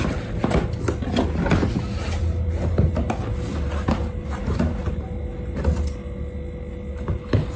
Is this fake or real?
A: real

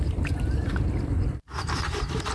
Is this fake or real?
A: fake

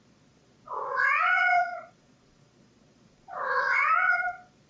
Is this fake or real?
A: fake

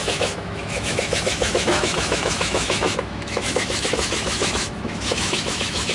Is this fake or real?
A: fake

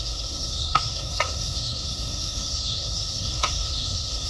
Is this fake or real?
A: fake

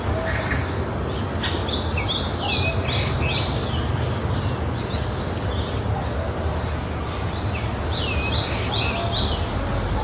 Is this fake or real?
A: real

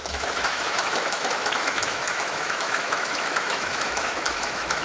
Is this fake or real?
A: fake